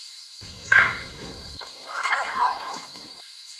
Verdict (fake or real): fake